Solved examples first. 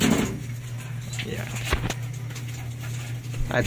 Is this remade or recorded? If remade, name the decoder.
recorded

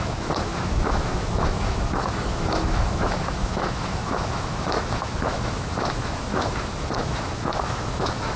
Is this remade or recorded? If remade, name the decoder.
remade, autoencoder, DAC-VAE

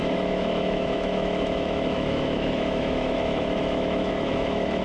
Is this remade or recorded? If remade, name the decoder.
remade, autoencoder, DAC-VAE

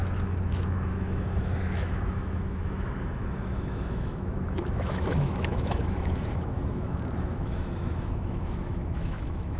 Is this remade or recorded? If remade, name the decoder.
remade, autoencoder, DAC-VAE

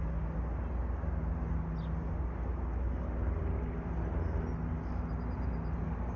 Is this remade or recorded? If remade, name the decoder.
recorded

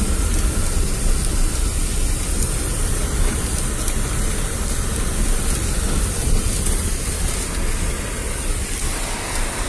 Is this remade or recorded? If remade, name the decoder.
recorded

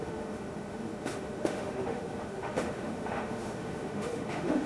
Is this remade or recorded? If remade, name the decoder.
remade, autoencoder, DAC-VAE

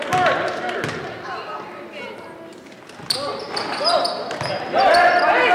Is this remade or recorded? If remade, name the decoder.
recorded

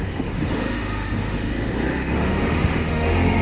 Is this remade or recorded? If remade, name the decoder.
remade, autoencoder, DAC-VAE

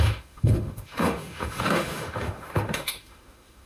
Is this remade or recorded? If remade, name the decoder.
remade, autoencoder, DAC-VAE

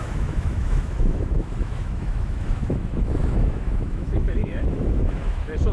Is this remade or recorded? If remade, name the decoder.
remade, autoencoder, DAC-VAE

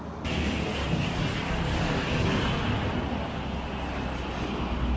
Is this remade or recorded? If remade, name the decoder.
recorded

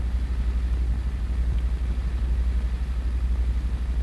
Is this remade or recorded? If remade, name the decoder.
recorded